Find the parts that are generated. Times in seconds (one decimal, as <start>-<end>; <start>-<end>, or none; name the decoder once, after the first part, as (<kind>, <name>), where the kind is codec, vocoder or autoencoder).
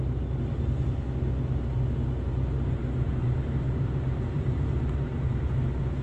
3.2-5.5 (vocoder, BigVGAN v2)